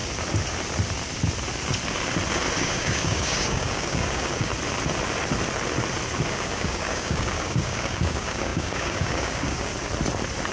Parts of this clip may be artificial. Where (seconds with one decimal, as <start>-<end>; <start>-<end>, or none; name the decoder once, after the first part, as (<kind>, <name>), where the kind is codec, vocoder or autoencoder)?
2.6-4.5 (codec, DAC); 6.3-9.7